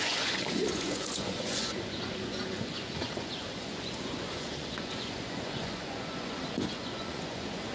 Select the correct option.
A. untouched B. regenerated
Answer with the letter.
B